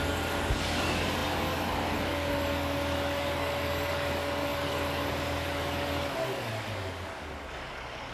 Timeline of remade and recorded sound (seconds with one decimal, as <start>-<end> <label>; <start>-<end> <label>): 0.0-8.1 remade